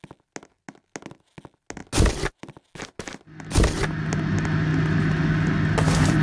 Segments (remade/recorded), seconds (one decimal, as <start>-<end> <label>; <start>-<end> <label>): 0.0-6.2 recorded